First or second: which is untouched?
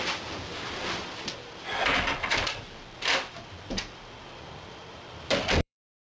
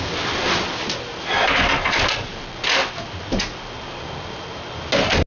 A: second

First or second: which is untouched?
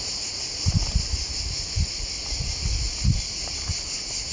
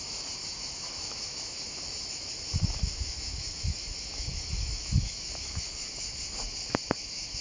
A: first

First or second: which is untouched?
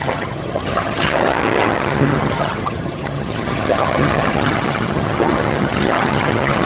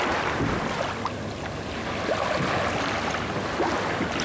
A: second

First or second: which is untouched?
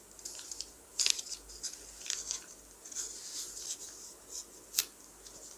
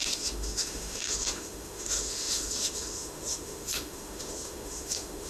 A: first